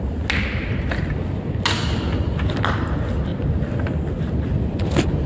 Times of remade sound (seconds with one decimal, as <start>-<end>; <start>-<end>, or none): none